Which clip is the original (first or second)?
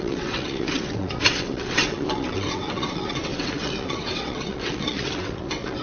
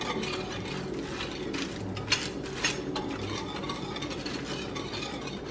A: second